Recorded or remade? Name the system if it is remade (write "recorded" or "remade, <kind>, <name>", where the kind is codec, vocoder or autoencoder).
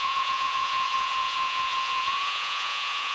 remade, vocoder, Vocos